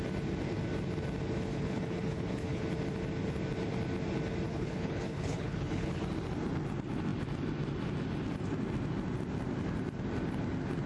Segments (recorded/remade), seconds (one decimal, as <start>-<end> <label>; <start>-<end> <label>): 0.0-1.5 recorded; 1.5-2.6 remade; 2.6-4.5 recorded; 4.5-6.0 remade; 6.0-10.9 recorded